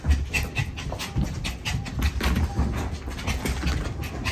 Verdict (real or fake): real